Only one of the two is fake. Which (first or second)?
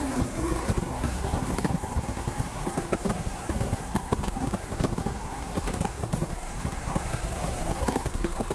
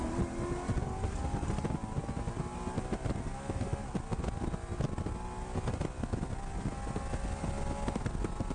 first